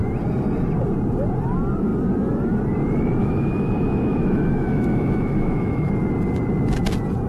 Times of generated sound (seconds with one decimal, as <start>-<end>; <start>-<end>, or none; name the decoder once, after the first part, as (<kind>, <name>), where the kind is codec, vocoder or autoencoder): 3.2-5.9 (autoencoder, DAC-VAE)